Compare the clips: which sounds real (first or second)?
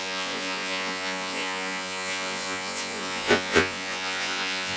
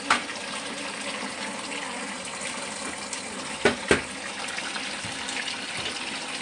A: second